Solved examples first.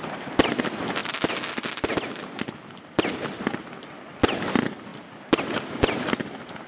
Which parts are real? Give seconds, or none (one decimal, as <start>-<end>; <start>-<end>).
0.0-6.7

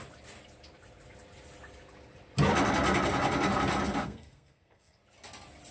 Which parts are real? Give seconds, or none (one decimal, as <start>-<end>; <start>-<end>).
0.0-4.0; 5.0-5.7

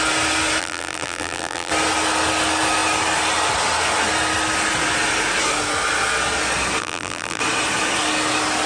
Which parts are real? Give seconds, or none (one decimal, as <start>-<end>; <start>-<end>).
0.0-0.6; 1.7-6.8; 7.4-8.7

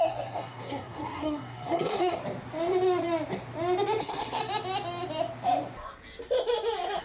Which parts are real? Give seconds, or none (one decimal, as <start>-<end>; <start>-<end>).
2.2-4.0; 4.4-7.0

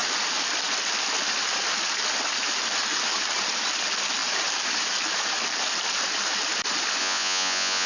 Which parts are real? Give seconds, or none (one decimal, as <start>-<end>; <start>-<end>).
0.0-7.0

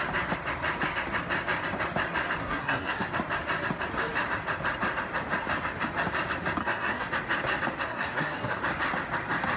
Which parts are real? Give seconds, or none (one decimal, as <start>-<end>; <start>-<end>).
0.0-2.4; 3.1-6.6; 7.1-7.9; 8.6-9.6

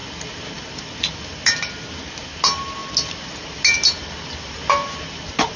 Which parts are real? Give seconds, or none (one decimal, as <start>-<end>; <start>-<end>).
0.0-5.6